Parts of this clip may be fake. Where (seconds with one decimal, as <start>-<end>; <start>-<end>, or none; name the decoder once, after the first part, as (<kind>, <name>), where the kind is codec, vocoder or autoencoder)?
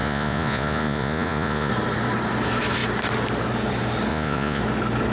0.0-1.7 (vocoder, Vocos); 4.1-4.6